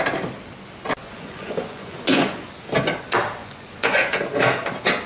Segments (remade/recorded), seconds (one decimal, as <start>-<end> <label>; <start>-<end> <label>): 0.0-1.0 recorded; 1.0-2.5 remade; 2.5-3.4 recorded; 3.4-4.2 remade; 4.2-5.1 recorded